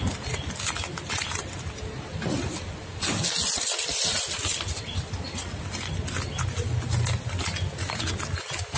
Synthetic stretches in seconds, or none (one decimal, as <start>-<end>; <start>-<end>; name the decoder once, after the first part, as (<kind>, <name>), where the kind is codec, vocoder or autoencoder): 0.9-1.5 (vocoder, BigVGAN v2)